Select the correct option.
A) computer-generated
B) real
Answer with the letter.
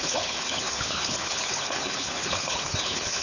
A